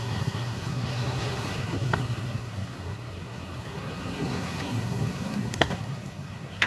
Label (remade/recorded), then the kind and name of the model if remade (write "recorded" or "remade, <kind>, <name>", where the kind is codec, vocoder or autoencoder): remade, codec, SNAC